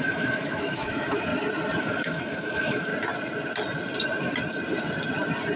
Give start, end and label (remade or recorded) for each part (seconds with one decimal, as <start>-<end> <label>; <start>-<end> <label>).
0.0-1.3 remade; 1.3-1.8 recorded; 1.8-2.9 remade; 2.9-5.6 recorded